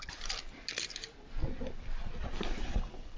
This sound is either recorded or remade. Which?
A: recorded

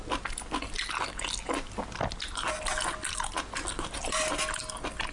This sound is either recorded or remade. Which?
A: recorded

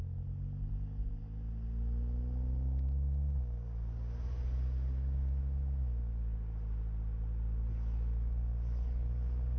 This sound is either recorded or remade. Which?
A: recorded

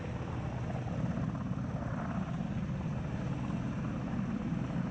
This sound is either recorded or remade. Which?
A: recorded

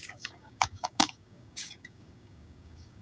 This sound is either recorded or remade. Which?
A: remade